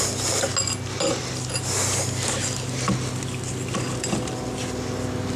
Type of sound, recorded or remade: recorded